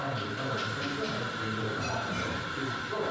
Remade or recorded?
remade